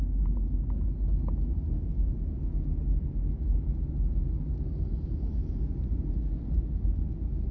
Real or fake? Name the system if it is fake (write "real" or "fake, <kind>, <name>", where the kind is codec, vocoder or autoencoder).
real